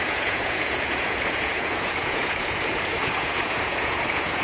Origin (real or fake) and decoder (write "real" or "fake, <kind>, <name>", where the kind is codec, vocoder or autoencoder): fake, vocoder, Vocos